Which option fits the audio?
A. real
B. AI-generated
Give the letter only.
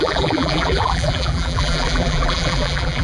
B